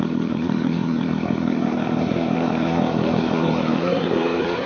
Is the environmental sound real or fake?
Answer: fake